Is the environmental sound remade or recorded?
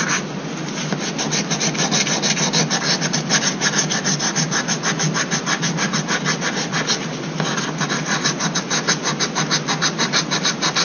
recorded